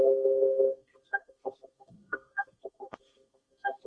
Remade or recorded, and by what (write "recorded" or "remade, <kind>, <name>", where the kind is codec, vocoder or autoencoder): remade, codec, SNAC